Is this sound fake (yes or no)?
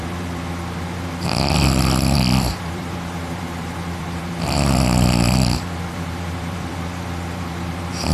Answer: yes